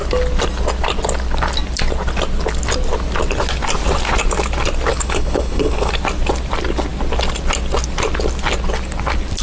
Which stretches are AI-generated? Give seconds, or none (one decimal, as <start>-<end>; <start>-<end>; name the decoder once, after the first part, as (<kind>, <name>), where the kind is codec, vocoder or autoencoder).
4.9-5.9 (codec, HILCodec)